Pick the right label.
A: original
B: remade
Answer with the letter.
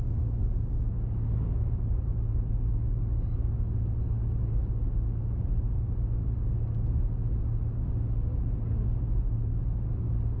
A